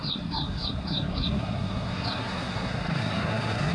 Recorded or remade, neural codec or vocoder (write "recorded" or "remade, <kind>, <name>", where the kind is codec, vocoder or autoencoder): remade, codec, SNAC